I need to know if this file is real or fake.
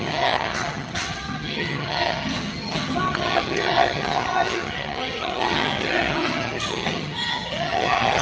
fake